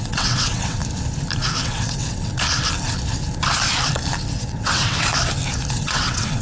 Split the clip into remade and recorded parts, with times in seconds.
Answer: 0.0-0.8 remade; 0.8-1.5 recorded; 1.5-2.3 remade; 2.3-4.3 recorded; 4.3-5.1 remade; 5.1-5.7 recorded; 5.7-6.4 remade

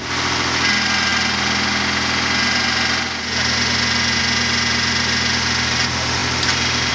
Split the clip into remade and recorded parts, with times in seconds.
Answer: 0.0-6.9 recorded

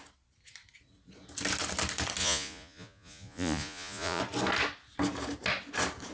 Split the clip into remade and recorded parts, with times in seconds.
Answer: 0.0-2.2 recorded; 2.2-4.2 remade; 4.2-6.1 recorded

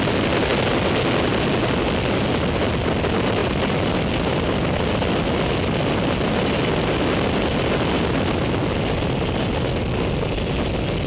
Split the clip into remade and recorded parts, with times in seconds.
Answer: 0.0-11.1 recorded